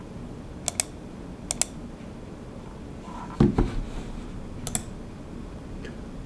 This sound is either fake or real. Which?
real